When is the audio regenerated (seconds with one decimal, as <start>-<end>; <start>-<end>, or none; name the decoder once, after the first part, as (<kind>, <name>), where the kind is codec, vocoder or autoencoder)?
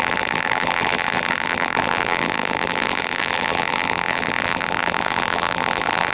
0.0-6.1 (vocoder, BigVGAN v2)